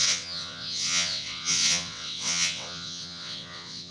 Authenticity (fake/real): fake